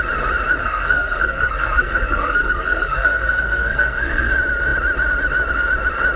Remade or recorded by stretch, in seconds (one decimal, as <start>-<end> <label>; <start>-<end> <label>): 0.0-0.6 recorded; 0.6-4.3 remade; 4.3-6.2 recorded